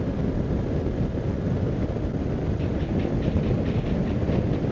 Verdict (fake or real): real